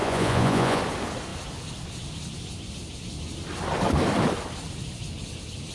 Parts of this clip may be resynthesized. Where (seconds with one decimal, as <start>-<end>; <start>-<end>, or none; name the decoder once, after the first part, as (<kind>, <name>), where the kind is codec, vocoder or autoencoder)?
0.0-0.8 (vocoder, Vocos)